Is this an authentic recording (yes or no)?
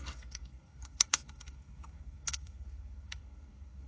no